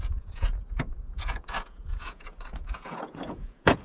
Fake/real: fake